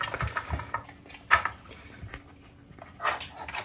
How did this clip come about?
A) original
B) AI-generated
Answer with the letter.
A